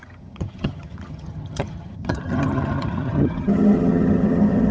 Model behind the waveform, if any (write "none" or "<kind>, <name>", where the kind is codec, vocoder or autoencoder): vocoder, HiFi-GAN